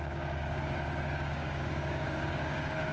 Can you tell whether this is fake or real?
fake